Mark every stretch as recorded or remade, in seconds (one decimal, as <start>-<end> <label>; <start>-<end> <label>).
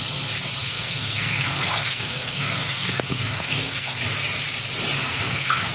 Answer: 0.0-0.6 recorded; 0.6-4.0 remade; 4.0-5.0 recorded; 5.0-5.7 remade